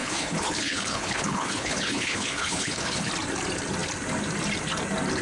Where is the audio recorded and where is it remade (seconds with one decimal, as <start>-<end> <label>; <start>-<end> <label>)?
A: 0.0-3.1 remade; 3.1-5.2 recorded